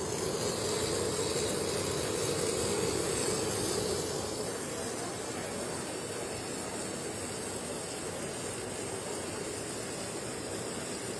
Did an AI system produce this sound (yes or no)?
no